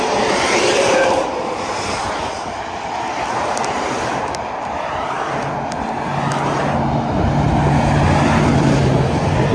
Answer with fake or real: real